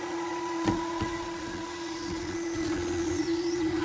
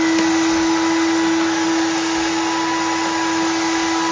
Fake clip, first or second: first